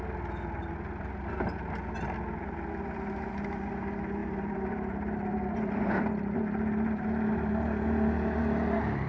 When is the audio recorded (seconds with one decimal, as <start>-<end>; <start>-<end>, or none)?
0.0-0.6; 1.5-4.2; 6.4-9.1